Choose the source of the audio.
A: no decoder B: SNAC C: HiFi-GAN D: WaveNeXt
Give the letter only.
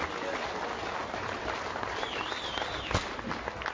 A